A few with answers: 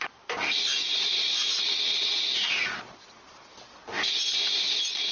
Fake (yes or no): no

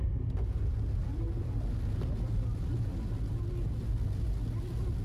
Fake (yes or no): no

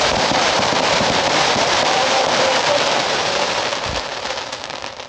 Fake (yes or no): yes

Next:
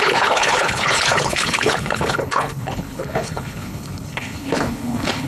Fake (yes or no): yes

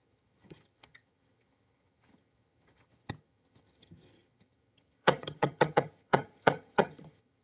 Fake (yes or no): yes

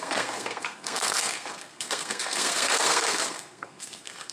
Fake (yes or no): yes